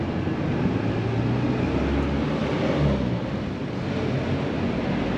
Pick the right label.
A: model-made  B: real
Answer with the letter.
B